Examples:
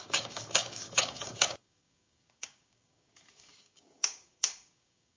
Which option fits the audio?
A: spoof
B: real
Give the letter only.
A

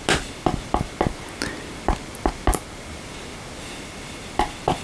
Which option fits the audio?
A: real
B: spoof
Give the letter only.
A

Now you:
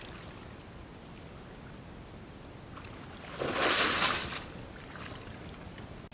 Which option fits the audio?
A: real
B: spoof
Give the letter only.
A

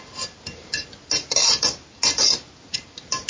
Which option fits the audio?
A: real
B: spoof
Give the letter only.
A